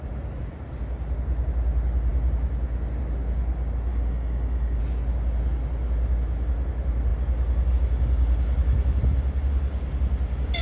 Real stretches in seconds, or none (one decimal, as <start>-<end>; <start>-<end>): 0.0-3.9; 4.8-10.6